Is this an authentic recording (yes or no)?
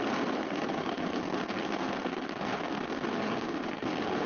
no